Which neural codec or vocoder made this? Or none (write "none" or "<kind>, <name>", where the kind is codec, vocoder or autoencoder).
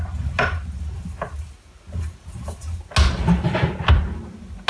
none